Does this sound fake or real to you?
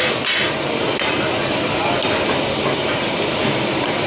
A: real